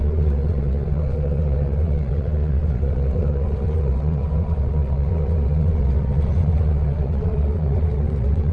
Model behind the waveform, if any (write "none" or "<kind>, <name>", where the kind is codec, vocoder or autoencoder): vocoder, WaveNeXt